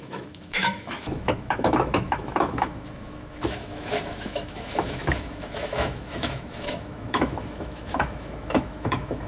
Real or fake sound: fake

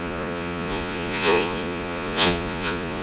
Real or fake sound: fake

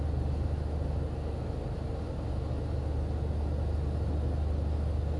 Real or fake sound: real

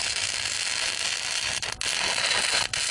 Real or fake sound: real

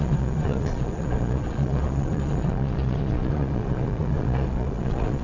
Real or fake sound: fake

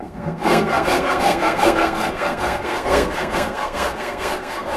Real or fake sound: fake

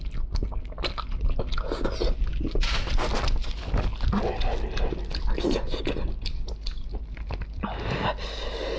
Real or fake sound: real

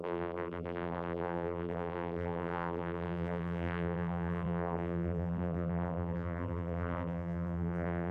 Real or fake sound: fake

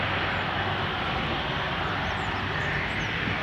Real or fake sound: real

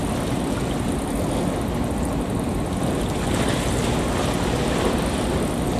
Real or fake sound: real